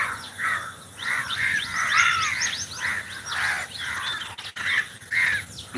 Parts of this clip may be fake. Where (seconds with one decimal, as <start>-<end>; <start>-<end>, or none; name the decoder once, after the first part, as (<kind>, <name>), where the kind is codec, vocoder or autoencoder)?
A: 0.0-2.1 (vocoder, Vocos)